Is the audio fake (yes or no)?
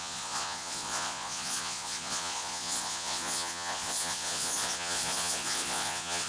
yes